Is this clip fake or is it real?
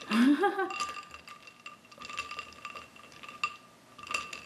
real